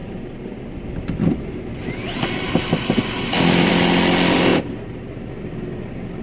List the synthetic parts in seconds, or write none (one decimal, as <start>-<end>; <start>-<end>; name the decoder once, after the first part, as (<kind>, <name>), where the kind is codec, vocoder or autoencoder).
0.0-3.7 (vocoder, BigVGAN v2); 4.5-5.3